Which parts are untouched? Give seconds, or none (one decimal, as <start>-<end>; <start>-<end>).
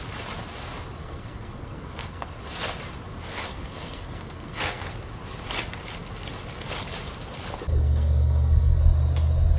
0.0-1.0; 2.4-3.5; 5.1-7.7; 8.8-9.6